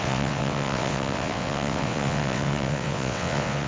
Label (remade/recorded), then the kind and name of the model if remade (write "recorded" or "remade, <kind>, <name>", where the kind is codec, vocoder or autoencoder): remade, vocoder, WaveNeXt